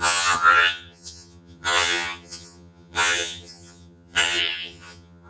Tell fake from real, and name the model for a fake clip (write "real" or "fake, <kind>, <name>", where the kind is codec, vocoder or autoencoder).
fake, vocoder, HiFi-GAN